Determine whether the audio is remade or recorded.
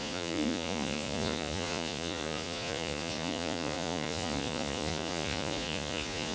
remade